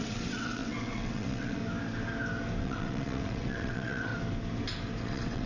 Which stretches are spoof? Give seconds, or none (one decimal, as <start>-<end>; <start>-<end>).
0.0-1.6; 2.6-4.1; 5.0-5.5